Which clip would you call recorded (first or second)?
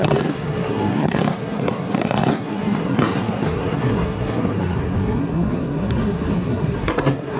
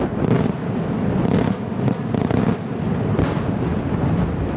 second